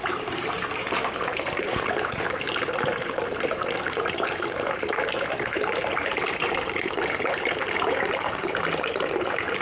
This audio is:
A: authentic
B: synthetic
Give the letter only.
B